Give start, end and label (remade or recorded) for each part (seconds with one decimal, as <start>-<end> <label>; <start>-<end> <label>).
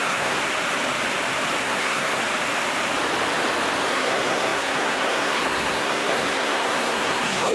0.0-0.4 remade; 0.4-1.6 recorded; 1.6-2.2 remade; 2.2-3.9 recorded; 3.9-7.5 remade